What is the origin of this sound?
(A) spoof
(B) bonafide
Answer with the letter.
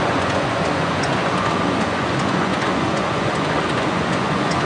A